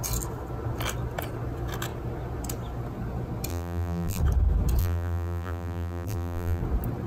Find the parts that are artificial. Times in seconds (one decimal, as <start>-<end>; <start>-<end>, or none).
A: 3.5-4.2; 4.8-6.6